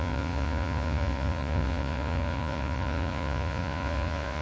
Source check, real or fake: fake